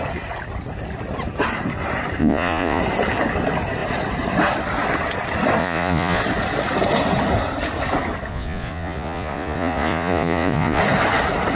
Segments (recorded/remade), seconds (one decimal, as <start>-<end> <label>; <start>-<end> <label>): 0.0-2.2 recorded; 2.2-2.8 remade; 2.8-5.6 recorded; 5.6-6.2 remade; 6.2-8.3 recorded; 8.3-10.8 remade; 10.8-11.6 recorded